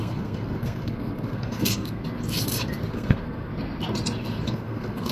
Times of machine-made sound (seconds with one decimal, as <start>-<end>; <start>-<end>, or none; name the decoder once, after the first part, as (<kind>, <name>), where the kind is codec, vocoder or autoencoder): 0.0-2.0 (codec, SNAC); 2.9-3.5; 4.5-5.1